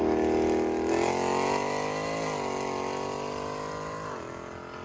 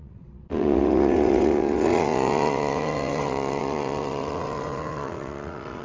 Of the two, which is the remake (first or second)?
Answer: second